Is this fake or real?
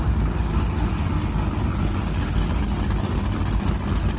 real